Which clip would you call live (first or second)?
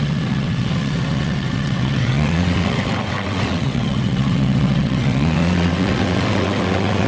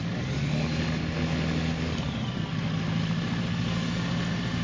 second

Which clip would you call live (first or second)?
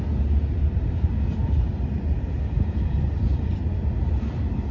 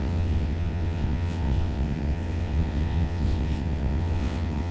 first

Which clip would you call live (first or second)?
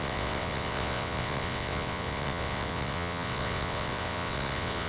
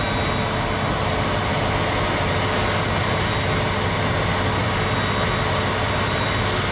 second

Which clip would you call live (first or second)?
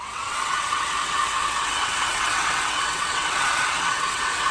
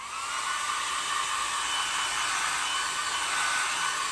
second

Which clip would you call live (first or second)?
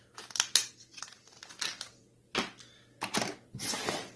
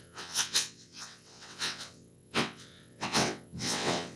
first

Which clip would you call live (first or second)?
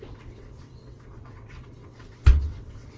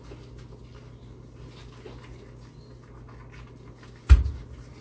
second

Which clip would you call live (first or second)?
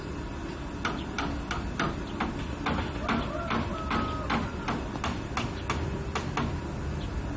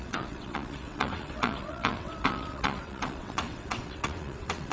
first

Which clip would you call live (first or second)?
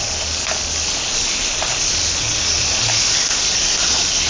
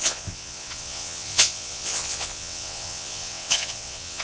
first